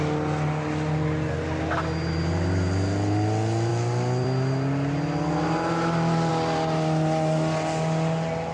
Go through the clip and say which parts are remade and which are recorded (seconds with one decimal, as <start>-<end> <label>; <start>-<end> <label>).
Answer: 0.0-3.7 recorded; 3.7-6.3 remade; 6.3-8.5 recorded